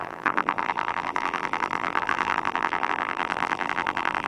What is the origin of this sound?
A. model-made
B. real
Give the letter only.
A